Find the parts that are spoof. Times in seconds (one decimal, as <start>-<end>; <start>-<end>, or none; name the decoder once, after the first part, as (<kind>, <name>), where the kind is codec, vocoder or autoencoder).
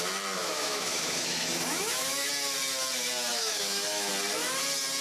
0.4-2.3 (autoencoder, DAC-VAE); 3.3-4.1